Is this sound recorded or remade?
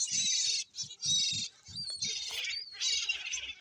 recorded